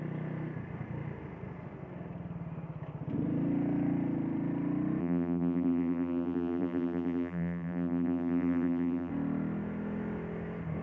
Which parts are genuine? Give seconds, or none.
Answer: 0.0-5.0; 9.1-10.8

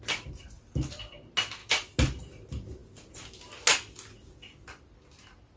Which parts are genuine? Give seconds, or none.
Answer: 0.0-5.6

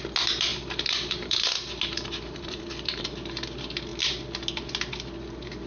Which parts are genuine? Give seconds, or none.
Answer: 0.0-0.5; 3.0-5.7